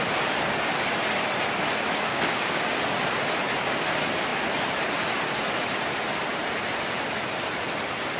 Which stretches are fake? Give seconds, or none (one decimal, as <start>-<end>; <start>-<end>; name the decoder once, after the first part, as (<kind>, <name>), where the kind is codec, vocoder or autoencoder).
2.1-2.6 (codec, DAC)